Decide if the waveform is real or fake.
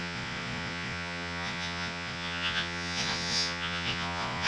fake